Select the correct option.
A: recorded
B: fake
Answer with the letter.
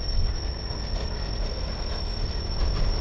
A